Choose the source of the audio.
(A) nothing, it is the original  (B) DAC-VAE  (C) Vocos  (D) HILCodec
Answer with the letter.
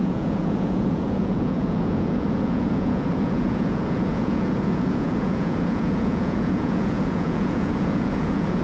C